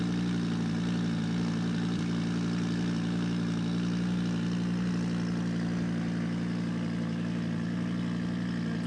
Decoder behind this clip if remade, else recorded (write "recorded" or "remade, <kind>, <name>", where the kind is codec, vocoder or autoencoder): recorded